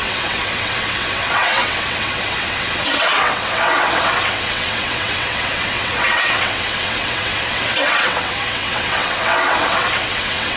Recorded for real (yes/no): no